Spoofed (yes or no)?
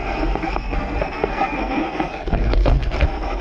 yes